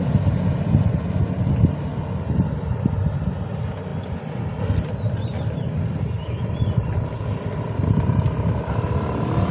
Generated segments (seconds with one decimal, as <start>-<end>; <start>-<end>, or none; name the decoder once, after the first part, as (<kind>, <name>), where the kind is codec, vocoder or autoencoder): none